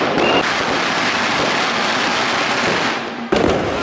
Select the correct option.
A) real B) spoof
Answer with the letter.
A